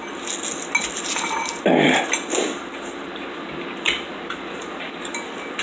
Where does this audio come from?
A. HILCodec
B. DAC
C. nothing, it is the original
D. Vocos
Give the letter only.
C